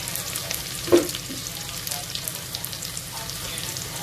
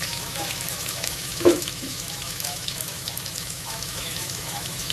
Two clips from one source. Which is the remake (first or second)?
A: second